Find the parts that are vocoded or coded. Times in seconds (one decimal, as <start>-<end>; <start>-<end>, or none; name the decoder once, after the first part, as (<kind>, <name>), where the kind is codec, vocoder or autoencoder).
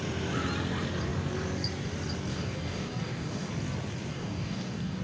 2.3-3.5 (codec, DAC); 4.1-5.0